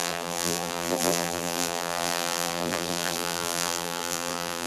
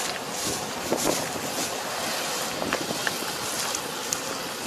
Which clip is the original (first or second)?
second